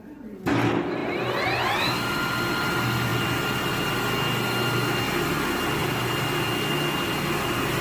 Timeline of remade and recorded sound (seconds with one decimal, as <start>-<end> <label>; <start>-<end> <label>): 0.0-3.1 recorded; 3.1-3.7 remade; 3.7-5.8 recorded; 5.8-6.6 remade; 6.6-7.8 recorded